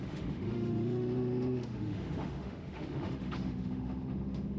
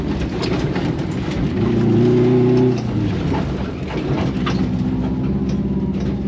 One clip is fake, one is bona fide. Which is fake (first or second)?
first